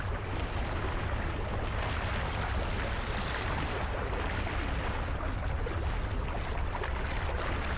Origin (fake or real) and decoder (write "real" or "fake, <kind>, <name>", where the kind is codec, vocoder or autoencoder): real